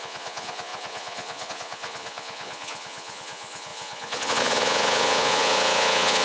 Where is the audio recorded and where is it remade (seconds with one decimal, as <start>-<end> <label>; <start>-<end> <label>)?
0.0-6.2 remade